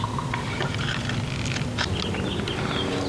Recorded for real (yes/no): yes